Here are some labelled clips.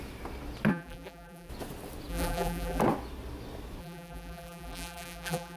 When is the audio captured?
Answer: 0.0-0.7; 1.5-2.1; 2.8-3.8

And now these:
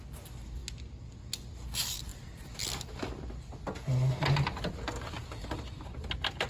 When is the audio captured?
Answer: 0.0-6.5

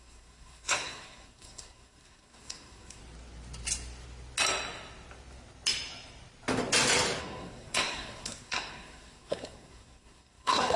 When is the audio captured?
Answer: 3.0-7.2